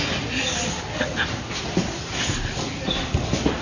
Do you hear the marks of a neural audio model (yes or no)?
no